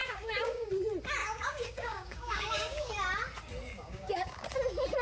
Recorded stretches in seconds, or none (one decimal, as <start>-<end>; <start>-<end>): 0.7-1.2; 2.9-3.7; 4.4-5.0